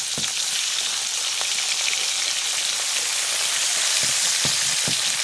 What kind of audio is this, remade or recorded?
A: recorded